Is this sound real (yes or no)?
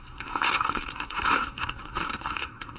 no